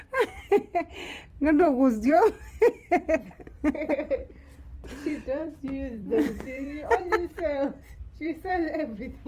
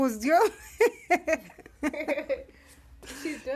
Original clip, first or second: second